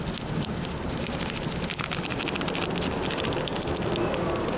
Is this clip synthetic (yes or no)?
no